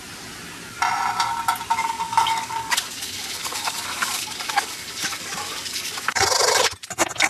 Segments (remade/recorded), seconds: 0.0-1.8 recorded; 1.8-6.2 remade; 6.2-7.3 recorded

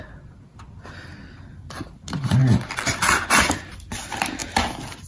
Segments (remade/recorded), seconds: 0.0-5.1 recorded

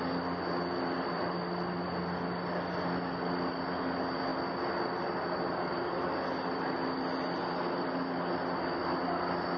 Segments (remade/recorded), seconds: 0.0-9.6 recorded

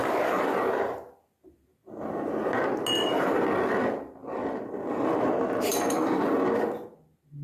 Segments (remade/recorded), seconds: 0.0-4.2 recorded; 4.2-5.3 remade; 5.3-5.7 recorded; 5.7-6.2 remade; 6.2-7.4 recorded